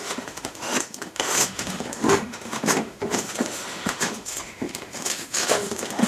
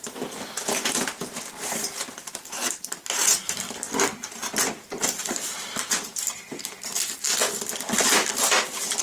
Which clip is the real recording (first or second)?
second